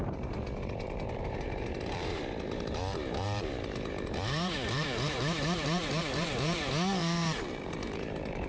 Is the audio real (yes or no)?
no